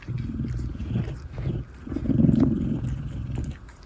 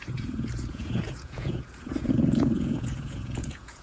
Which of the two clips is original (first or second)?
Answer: first